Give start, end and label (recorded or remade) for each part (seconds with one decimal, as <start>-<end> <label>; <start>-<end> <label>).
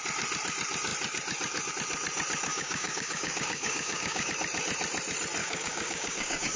0.0-2.5 recorded; 2.5-4.3 remade; 4.3-5.4 recorded; 5.4-6.6 remade